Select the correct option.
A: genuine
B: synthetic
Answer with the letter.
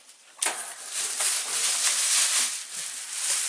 A